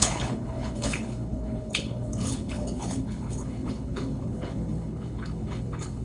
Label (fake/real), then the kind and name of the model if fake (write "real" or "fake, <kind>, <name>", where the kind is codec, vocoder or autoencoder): fake, codec, HILCodec